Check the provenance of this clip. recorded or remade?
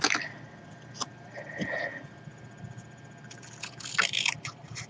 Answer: recorded